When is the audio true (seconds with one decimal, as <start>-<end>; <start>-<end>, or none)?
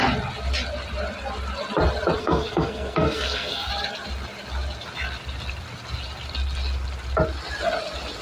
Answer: 0.0-2.2; 3.7-8.2